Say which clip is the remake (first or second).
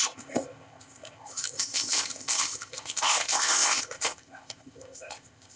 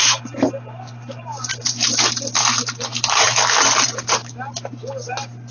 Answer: first